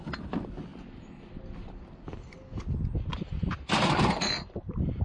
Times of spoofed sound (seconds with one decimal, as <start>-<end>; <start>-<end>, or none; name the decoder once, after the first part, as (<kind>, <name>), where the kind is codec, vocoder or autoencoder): none